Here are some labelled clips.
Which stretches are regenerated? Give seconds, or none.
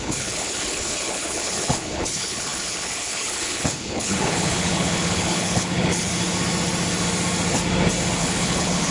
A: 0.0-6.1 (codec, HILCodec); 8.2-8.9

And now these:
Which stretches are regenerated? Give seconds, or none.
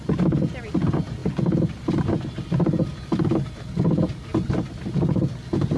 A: none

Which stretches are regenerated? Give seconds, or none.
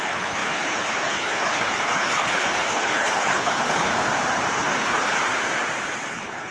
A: 0.0-3.9 (codec, HILCodec); 4.5-5.2; 6.1-6.5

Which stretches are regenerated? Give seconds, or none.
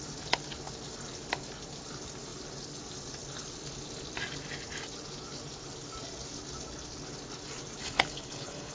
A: 7.8-8.7 (codec, HILCodec)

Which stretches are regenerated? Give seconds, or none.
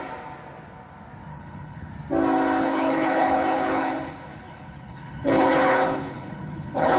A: 1.3-1.9 (codec, HILCodec); 2.6-7.0